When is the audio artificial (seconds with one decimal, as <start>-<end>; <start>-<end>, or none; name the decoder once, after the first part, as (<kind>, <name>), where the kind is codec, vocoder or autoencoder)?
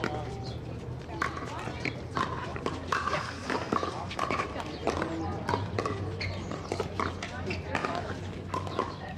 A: 2.5-4.1 (codec, DAC); 7.8-9.2